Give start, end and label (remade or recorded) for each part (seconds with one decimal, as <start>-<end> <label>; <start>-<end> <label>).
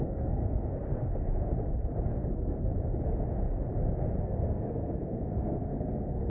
0.0-1.5 remade; 1.5-2.3 recorded; 2.3-2.7 remade; 2.7-4.2 recorded; 4.2-6.3 remade